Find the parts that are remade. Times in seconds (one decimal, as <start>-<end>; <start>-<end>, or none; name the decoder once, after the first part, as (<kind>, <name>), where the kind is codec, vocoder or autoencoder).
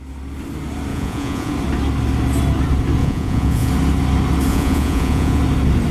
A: 0.9-1.5 (vocoder, Vocos); 3.0-3.7; 4.5-5.4